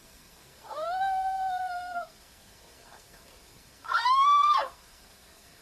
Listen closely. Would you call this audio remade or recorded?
remade